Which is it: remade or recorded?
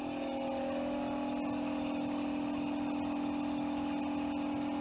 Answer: recorded